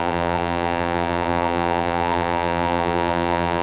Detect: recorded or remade remade